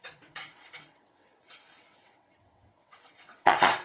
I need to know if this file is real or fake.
fake